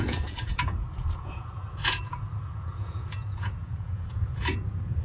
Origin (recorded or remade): remade